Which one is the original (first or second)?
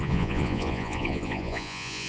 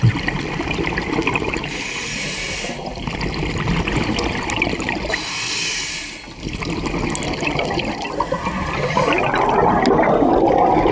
second